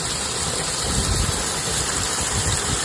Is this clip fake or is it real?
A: real